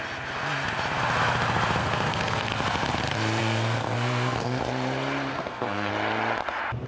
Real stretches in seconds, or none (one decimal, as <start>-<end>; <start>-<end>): 0.0-1.8; 2.5-3.4; 4.6-5.3; 5.9-6.9

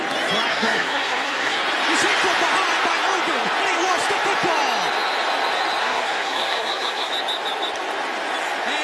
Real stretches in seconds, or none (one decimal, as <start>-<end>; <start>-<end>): 0.0-0.5; 1.6-5.8; 7.1-8.8

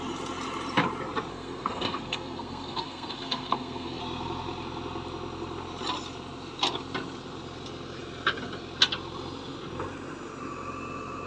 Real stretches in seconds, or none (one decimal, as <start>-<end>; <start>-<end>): 0.0-1.3; 4.0-11.3

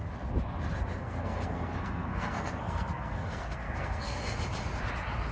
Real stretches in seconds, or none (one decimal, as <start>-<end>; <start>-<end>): 0.0-1.0; 4.2-5.3

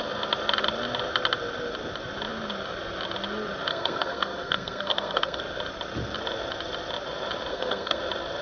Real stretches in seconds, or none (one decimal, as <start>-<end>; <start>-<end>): 0.0-3.7; 5.4-7.5; 8.0-8.4